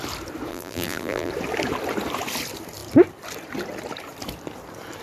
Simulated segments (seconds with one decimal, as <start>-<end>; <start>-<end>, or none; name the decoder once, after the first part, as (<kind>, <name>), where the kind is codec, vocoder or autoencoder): 0.5-1.3 (vocoder, BigVGAN v2)